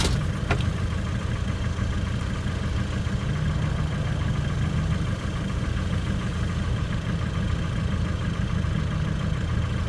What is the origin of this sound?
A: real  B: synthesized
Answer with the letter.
A